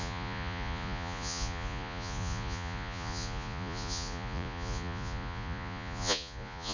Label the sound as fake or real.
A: fake